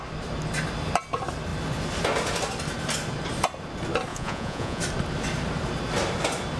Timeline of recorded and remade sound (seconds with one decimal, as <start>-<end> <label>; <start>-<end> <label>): 0.0-4.1 recorded; 4.1-4.8 remade; 4.8-6.6 recorded